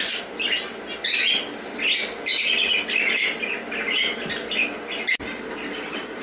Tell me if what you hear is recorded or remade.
recorded